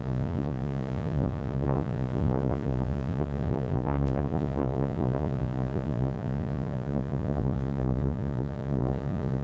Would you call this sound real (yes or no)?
no